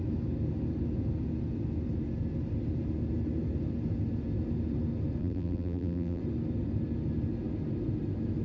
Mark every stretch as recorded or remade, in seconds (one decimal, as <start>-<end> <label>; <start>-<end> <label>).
0.0-5.2 recorded; 5.2-6.2 remade; 6.2-8.4 recorded